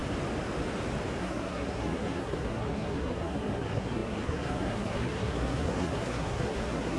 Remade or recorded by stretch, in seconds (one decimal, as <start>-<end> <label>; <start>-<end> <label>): 0.0-1.2 recorded; 1.2-7.0 remade